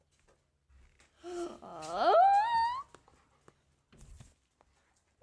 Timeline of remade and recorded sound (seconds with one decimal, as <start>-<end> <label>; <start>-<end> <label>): 0.0-5.2 recorded